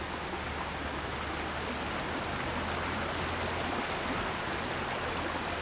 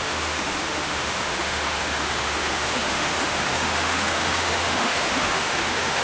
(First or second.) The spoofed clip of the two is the second